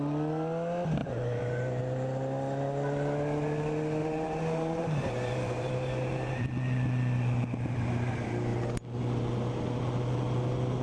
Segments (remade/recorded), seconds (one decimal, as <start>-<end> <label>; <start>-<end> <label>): 0.0-1.0 recorded; 1.0-1.8 remade; 1.8-4.0 recorded; 4.0-6.4 remade; 6.4-10.8 recorded